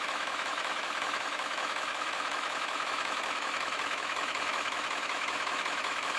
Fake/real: fake